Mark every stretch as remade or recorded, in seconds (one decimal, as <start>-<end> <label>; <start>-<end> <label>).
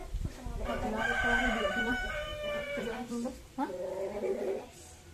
0.0-1.5 recorded; 1.5-2.3 remade; 2.3-2.8 recorded; 2.8-5.1 remade